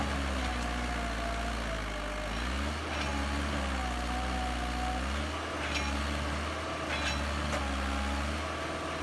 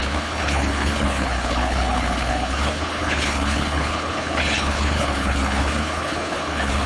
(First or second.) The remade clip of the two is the second